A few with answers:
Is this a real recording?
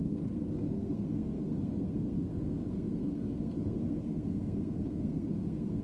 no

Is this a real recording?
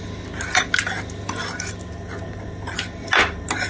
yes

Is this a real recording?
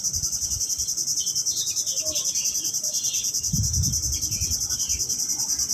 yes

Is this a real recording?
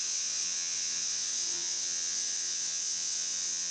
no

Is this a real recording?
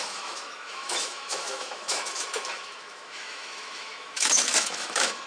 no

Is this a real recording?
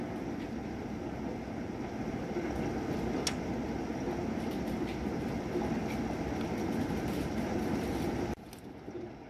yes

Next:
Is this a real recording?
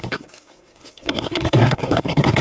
no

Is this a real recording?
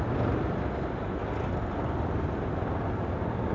yes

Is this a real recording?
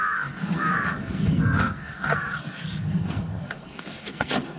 no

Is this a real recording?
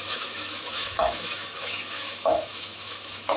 no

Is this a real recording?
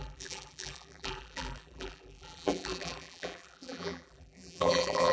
no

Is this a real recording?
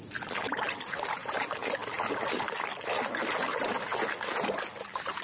yes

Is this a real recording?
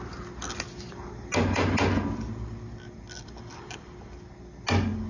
yes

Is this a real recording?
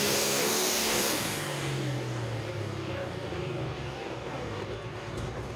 no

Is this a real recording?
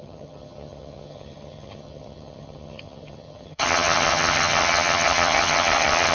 no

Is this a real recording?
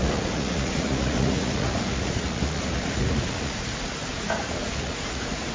no